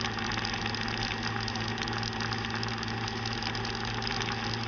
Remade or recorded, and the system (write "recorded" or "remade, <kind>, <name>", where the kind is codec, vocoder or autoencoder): recorded